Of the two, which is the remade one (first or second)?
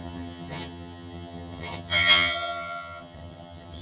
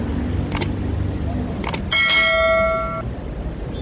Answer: first